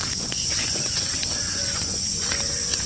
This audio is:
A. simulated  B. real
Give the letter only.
A